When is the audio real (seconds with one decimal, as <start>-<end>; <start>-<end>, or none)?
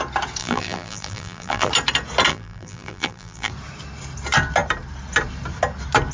0.0-0.4; 1.7-2.3; 3.5-6.1